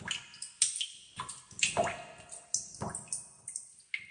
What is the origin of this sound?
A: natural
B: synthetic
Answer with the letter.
A